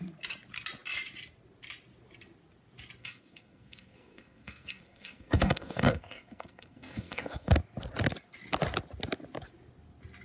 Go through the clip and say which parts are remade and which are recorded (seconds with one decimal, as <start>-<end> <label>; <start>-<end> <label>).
0.0-3.0 recorded; 3.0-7.5 remade; 7.5-10.2 recorded